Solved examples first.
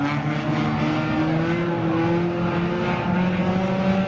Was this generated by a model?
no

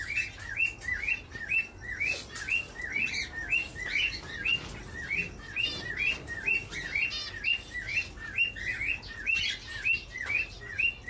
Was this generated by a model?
no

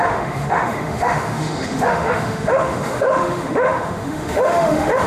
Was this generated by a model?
yes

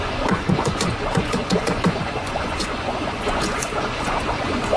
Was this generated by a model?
yes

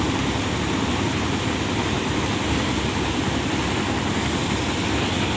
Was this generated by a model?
no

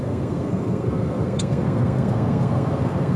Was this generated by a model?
yes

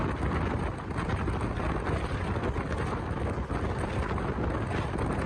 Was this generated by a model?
no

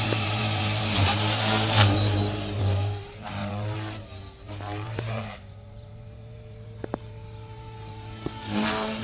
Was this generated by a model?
yes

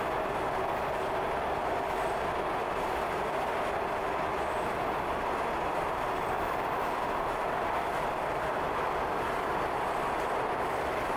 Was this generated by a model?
no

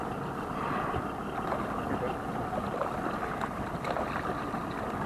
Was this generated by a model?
no